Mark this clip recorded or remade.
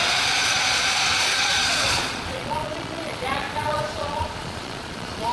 remade